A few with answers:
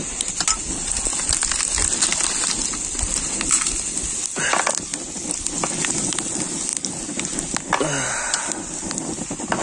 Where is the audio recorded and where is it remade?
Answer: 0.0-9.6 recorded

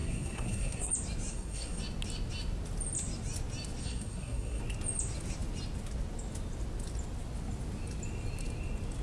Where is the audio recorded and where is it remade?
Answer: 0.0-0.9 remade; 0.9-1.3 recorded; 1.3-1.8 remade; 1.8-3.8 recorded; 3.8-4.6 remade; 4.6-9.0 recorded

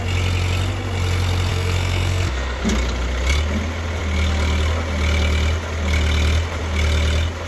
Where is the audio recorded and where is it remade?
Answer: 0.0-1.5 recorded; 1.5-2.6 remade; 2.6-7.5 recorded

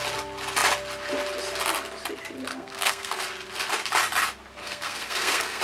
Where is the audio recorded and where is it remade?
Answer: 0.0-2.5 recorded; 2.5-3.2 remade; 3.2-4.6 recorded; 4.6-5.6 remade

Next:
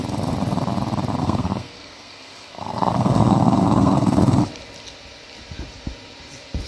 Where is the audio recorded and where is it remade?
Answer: 0.0-1.2 recorded; 1.2-4.4 remade; 4.4-6.7 recorded

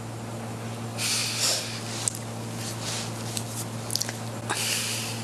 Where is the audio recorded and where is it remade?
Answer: 0.0-5.2 recorded

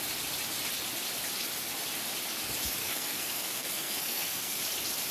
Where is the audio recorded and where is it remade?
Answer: 0.0-2.8 recorded; 2.8-4.6 remade; 4.6-5.1 recorded